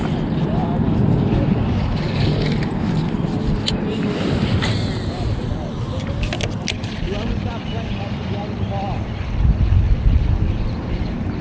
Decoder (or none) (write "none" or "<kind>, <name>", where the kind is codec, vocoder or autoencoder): none